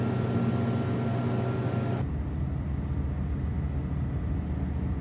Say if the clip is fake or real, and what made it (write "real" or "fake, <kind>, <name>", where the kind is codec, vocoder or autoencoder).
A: real